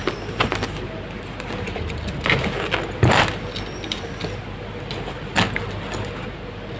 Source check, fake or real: real